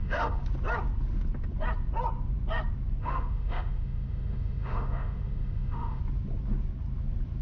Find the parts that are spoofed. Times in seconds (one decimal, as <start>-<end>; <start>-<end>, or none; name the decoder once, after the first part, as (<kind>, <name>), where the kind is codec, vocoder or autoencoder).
0.0-0.4 (autoencoder, DAC-VAE); 3.0-6.0